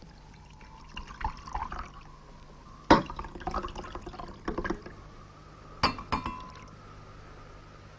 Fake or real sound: real